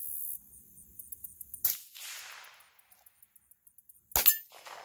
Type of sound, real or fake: real